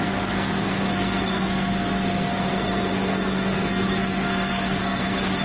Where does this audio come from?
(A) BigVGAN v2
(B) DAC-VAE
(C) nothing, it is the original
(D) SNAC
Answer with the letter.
D